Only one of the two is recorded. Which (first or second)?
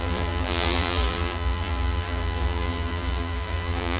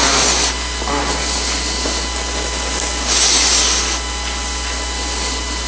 second